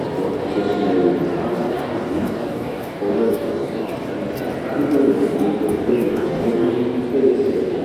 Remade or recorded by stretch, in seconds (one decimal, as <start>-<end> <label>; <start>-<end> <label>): 0.0-1.5 recorded; 1.5-3.9 remade; 3.9-5.7 recorded; 5.7-6.7 remade; 6.7-7.8 recorded